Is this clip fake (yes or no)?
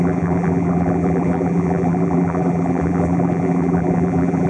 yes